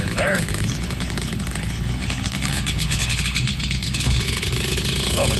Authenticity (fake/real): fake